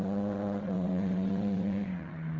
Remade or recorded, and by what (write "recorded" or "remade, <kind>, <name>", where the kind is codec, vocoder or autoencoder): remade, vocoder, WaveNeXt